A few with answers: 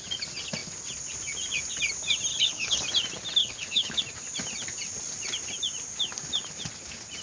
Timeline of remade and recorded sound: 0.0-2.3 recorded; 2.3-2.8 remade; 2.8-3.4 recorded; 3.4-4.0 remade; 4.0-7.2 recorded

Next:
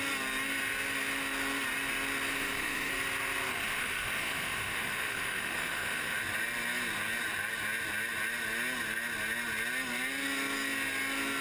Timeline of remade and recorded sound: 0.0-2.3 recorded; 2.3-2.9 remade; 2.9-3.5 recorded; 3.5-6.2 remade; 6.2-11.4 recorded

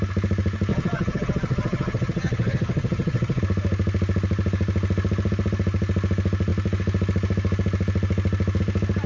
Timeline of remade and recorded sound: 0.0-0.7 recorded; 0.7-3.4 remade; 3.4-9.1 recorded

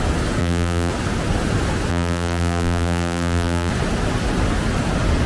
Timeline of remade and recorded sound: 0.0-0.4 recorded; 0.4-0.9 remade; 0.9-1.9 recorded; 1.9-3.7 remade; 3.7-5.3 recorded

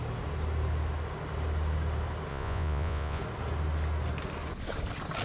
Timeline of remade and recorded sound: 0.0-2.3 recorded; 2.3-3.2 remade; 3.2-5.2 recorded